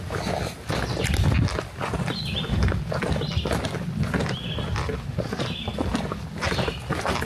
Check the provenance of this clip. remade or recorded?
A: recorded